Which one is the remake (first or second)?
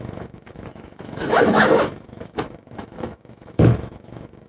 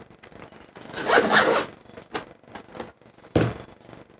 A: first